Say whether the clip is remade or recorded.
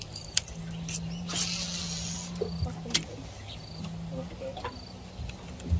recorded